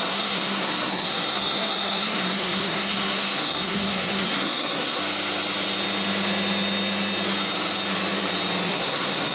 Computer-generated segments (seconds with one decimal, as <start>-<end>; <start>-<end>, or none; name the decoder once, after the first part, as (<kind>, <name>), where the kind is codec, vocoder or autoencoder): 0.0-5.0 (codec, SNAC); 8.7-9.3